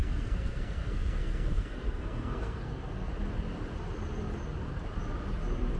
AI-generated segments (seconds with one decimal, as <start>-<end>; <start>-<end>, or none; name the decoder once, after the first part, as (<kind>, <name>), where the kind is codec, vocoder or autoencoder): 0.0-3.1 (codec, SNAC)